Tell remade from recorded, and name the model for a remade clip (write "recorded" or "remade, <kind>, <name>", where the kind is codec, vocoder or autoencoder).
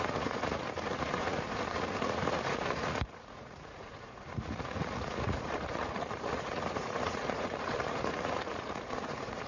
remade, vocoder, Vocos